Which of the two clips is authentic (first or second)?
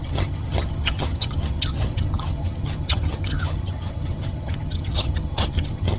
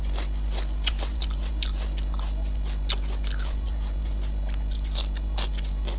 second